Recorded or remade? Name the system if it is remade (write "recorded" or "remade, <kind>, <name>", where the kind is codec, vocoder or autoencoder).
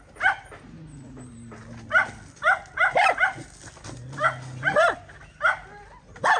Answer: recorded